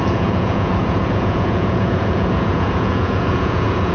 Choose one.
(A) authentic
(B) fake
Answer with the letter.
B